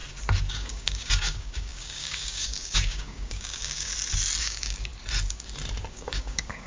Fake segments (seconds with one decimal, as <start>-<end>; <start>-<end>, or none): 0.5-3.9; 4.4-4.9; 5.9-6.7